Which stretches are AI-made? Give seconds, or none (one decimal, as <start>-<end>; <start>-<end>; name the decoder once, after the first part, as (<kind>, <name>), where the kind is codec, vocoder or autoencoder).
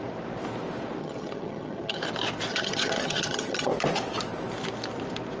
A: 1.0-2.0 (vocoder, HiFi-GAN); 2.5-3.7